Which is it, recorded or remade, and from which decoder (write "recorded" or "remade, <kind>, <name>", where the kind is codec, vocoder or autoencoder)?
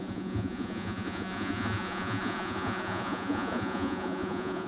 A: remade, vocoder, Vocos